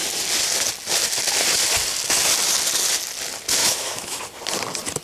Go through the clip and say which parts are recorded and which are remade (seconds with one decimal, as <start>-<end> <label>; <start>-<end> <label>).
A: 0.0-3.6 recorded; 3.6-4.2 remade; 4.2-5.0 recorded